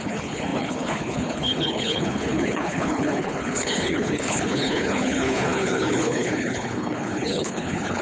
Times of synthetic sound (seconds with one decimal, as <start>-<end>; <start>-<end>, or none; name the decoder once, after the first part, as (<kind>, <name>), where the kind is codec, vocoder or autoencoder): 0.0-8.0 (codec, HILCodec)